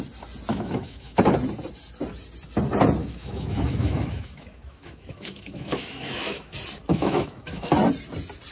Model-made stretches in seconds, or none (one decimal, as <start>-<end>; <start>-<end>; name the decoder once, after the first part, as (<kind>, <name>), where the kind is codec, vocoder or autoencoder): 0.5-1.2 (autoencoder, DAC-VAE); 3.0-6.5; 6.9-7.7